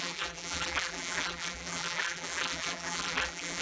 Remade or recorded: remade